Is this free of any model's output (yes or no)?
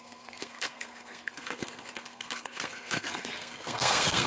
no